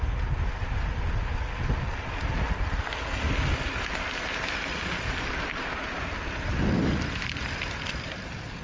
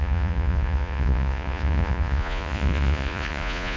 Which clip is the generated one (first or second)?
second